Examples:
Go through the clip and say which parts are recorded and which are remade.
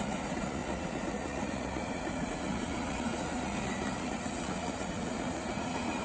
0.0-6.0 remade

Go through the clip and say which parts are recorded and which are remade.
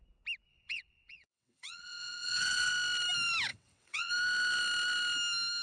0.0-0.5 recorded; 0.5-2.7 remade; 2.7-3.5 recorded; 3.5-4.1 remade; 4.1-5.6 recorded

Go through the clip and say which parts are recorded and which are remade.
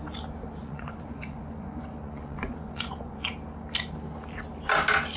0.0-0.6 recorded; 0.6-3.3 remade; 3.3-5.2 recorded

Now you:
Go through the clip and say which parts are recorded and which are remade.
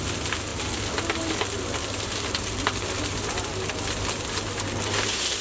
0.0-5.4 recorded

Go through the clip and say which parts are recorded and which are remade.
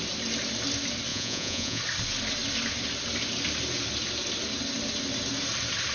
0.0-1.1 recorded; 1.1-1.8 remade; 1.8-5.9 recorded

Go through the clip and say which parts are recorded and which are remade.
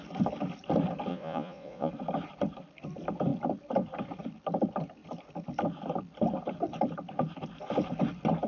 0.0-1.1 recorded; 1.1-1.9 remade; 1.9-8.5 recorded